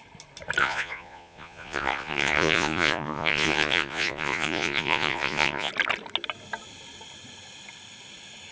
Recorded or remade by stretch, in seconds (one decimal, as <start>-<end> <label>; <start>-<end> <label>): 0.0-0.6 recorded; 0.6-5.7 remade; 5.7-8.5 recorded